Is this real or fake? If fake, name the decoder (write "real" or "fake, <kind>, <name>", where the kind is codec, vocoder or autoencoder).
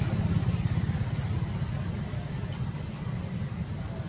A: real